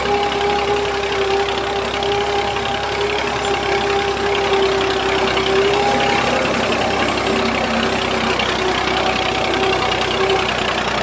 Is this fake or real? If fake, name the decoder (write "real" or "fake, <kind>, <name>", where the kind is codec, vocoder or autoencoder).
real